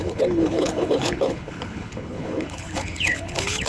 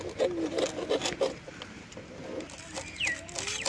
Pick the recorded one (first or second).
second